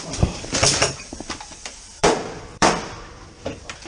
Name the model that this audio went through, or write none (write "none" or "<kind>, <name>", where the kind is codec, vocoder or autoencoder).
vocoder, BigVGAN v2